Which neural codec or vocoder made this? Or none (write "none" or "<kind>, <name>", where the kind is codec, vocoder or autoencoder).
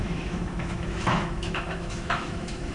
autoencoder, DAC-VAE